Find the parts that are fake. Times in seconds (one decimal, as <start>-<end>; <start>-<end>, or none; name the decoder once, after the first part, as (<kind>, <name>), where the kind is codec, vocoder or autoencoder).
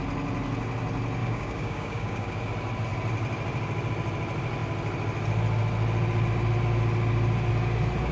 1.2-2.5 (codec, DAC)